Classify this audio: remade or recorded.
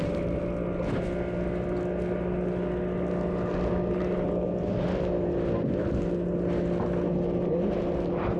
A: recorded